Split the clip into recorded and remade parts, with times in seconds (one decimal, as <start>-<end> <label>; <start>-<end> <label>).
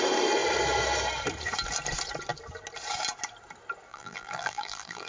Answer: 0.0-3.9 recorded; 3.9-5.1 remade